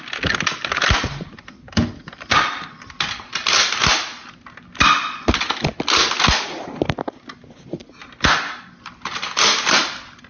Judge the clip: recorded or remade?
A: recorded